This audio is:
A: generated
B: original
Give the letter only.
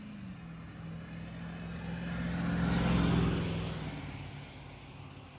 B